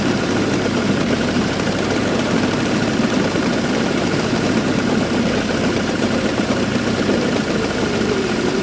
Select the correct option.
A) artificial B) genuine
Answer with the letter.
A